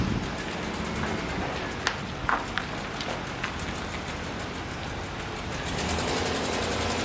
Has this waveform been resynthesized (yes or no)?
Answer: no